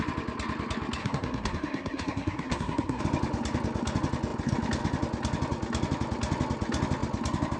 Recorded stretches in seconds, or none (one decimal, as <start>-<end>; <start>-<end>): 0.0-1.0; 3.0-7.6